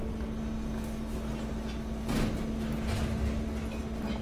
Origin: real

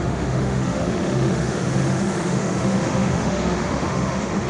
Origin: fake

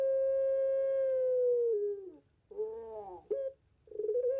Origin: real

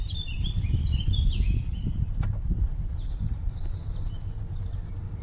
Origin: real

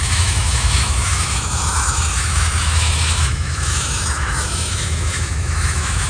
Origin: fake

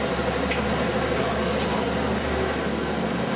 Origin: real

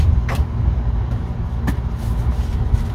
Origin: real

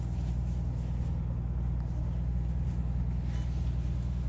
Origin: real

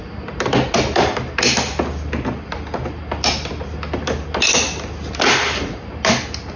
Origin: real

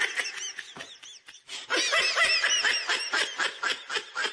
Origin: real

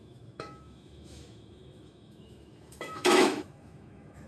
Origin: fake